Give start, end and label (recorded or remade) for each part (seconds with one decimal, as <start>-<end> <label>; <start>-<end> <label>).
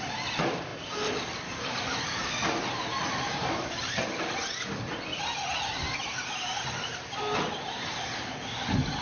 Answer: 0.0-0.7 recorded; 0.7-2.3 remade; 2.3-3.0 recorded; 3.0-7.0 remade; 7.0-9.0 recorded